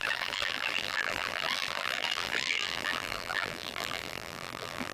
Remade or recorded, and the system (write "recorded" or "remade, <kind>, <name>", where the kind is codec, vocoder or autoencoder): remade, vocoder, BigVGAN v2